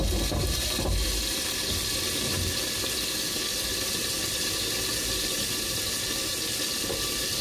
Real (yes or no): yes